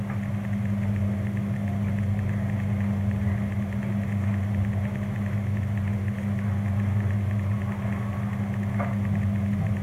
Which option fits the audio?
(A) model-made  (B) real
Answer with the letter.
B